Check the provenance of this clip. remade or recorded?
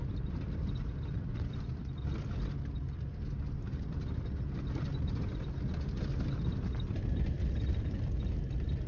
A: recorded